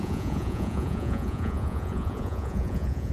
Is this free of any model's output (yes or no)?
no